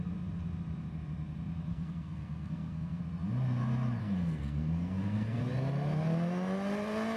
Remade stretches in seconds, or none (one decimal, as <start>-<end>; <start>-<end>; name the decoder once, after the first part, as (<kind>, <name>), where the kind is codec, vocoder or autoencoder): 1.7-3.0 (codec, SNAC); 4.0-5.4